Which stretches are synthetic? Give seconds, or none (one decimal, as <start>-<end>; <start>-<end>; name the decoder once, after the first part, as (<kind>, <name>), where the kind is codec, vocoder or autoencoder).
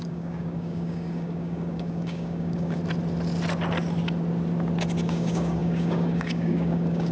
0.0-2.8 (codec, DAC); 5.0-7.1